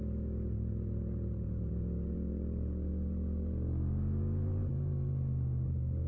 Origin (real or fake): real